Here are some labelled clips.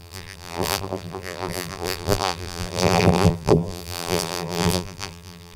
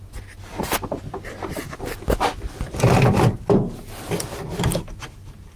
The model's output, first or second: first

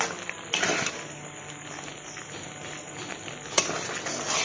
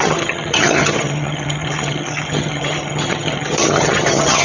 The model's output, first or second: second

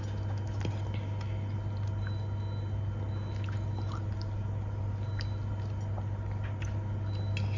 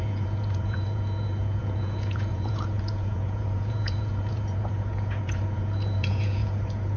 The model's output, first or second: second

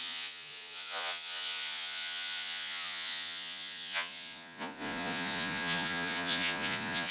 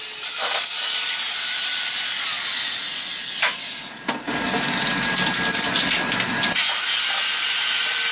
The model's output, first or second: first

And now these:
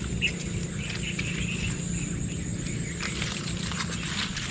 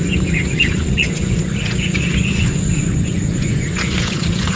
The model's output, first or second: second